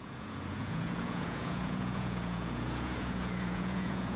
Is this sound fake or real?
fake